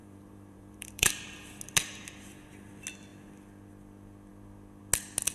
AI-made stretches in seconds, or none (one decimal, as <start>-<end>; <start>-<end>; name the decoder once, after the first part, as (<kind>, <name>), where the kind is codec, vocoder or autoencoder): 0.0-1.1 (vocoder, BigVGAN v2)